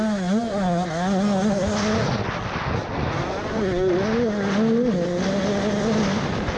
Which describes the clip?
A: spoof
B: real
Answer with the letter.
B